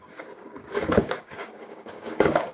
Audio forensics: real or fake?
fake